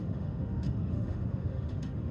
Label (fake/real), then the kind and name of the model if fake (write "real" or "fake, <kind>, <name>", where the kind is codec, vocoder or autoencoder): fake, autoencoder, DAC-VAE